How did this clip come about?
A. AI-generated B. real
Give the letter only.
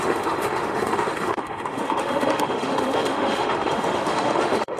A